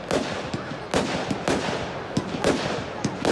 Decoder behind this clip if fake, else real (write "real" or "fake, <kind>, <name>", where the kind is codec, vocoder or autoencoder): real